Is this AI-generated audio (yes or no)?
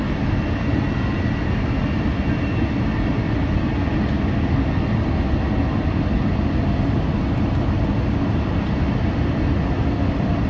no